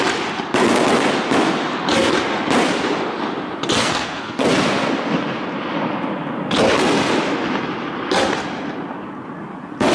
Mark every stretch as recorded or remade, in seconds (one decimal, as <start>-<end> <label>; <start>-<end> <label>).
0.0-3.8 recorded; 3.8-4.5 remade; 4.5-9.9 recorded